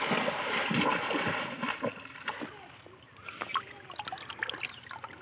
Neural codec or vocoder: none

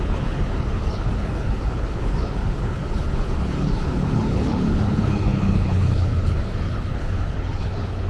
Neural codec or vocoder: codec, HILCodec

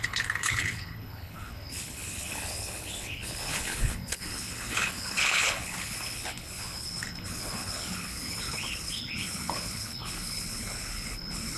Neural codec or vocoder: codec, HILCodec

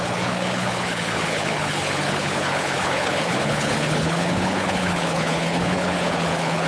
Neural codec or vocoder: codec, HILCodec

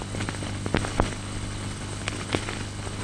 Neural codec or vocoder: codec, HILCodec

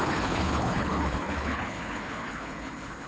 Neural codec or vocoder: codec, HILCodec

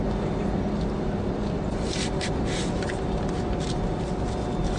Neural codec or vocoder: none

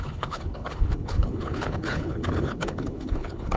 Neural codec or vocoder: codec, HILCodec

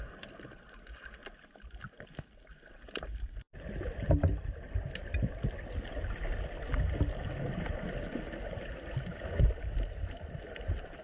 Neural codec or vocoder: none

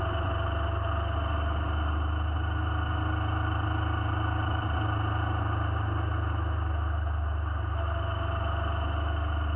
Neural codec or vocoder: none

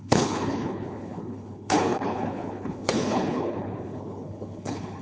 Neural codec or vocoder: codec, HILCodec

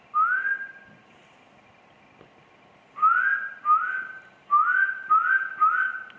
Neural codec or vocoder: none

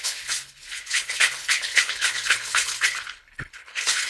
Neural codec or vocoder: codec, HILCodec